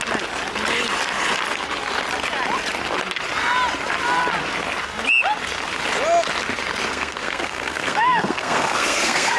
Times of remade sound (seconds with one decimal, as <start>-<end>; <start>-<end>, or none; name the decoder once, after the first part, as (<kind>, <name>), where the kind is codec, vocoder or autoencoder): 6.9-9.4 (codec, SNAC)